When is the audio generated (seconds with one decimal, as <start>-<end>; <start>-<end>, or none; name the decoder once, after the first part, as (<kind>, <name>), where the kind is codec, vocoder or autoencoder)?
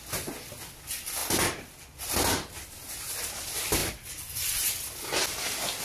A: none